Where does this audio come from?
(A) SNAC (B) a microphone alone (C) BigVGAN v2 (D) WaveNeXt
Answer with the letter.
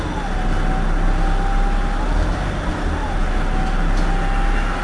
B